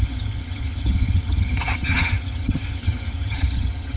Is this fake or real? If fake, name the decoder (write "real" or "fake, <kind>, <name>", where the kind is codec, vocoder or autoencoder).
fake, vocoder, HiFi-GAN